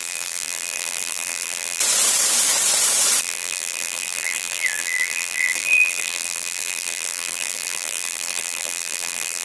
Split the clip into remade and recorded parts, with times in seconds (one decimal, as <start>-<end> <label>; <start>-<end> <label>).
0.0-1.8 remade; 1.8-3.2 recorded; 3.2-9.4 remade